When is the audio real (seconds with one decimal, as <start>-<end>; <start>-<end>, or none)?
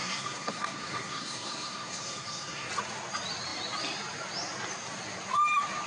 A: 2.7-5.9